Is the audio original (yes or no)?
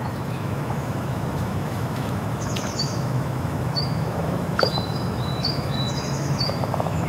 no